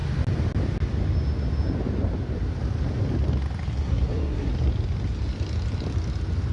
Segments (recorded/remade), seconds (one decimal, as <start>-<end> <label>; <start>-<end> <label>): 0.0-3.7 recorded; 3.7-4.5 remade; 4.5-6.5 recorded